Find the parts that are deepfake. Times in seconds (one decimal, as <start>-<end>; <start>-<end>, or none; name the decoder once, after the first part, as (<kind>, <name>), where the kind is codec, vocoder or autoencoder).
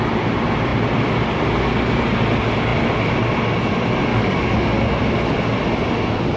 4.1-4.8 (codec, DAC)